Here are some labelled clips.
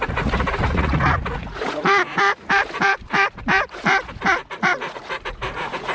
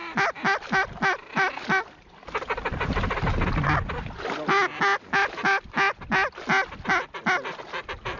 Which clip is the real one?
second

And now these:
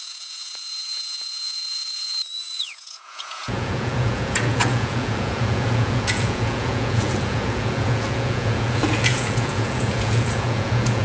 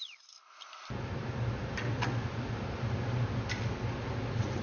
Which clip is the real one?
second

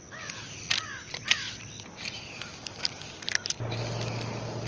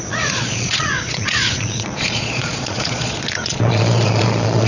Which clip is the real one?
first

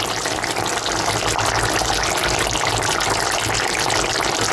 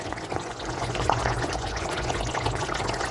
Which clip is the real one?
first